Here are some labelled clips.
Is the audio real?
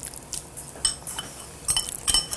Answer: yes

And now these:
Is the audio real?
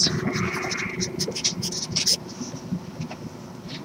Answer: yes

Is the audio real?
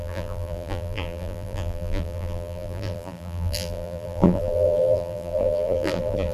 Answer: no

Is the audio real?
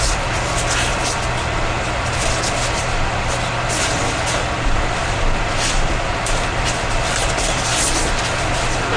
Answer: yes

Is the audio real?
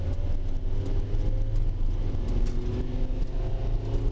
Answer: yes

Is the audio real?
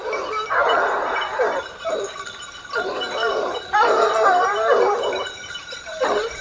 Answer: no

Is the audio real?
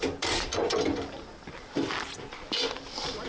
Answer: no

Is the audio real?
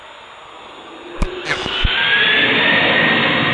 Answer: yes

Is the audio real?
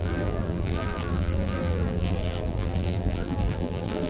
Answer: no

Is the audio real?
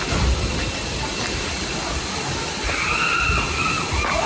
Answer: yes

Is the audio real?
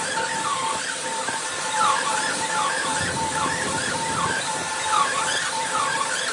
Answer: no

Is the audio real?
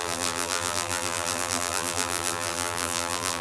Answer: no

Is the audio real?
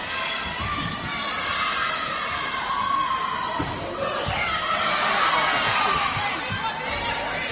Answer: yes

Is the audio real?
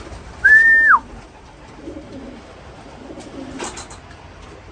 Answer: yes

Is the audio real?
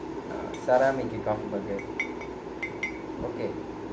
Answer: yes